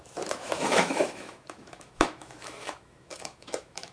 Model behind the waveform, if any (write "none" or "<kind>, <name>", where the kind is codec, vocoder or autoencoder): autoencoder, DAC-VAE